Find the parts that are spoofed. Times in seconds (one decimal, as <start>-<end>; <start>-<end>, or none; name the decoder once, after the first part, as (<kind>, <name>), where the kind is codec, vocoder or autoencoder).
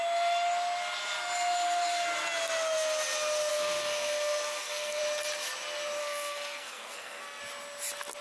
3.5-5.0 (codec, SNAC); 6.0-7.4